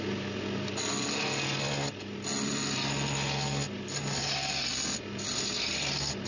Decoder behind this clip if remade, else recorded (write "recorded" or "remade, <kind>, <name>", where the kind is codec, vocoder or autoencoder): recorded